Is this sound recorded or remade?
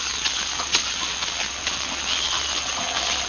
remade